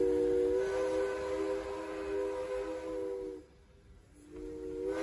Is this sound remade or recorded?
recorded